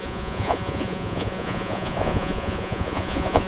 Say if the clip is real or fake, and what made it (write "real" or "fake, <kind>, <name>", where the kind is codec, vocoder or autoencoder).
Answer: fake, vocoder, Vocos